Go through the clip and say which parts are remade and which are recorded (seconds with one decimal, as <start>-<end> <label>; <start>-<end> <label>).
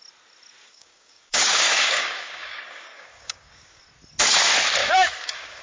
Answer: 0.0-0.6 recorded; 0.6-3.8 remade; 3.8-4.8 recorded; 4.8-5.6 remade